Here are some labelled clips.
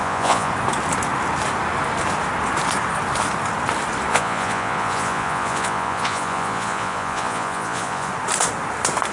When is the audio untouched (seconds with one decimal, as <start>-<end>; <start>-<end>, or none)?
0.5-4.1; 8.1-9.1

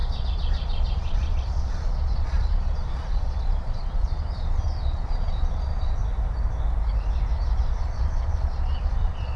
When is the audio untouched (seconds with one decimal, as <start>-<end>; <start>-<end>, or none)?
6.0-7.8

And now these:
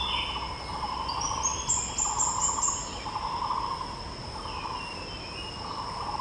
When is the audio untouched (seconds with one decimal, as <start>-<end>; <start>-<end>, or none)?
0.0-6.2

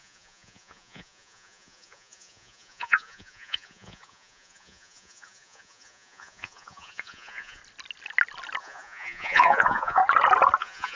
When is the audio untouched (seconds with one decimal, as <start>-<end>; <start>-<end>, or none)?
7.6-8.6; 10.0-10.6

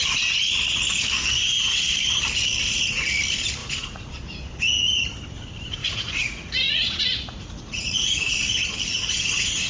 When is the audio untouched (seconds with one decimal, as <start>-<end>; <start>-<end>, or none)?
0.0-3.6; 4.1-5.8; 8.3-9.7

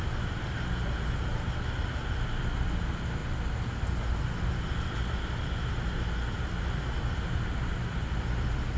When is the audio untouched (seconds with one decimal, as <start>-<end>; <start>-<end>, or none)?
0.0-8.8

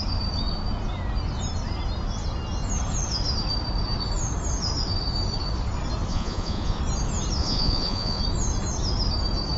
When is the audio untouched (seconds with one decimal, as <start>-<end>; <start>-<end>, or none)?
0.0-6.1; 6.8-7.4; 8.2-9.6

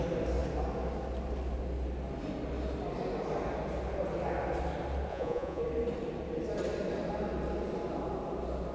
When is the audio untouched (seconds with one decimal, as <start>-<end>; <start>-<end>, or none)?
0.0-5.1; 5.6-8.7